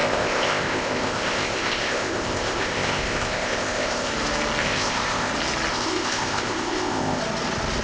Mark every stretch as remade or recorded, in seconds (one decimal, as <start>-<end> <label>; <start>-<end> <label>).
0.0-4.1 remade; 4.1-4.6 recorded; 4.6-5.3 remade; 5.3-5.7 recorded; 5.7-7.2 remade; 7.2-7.8 recorded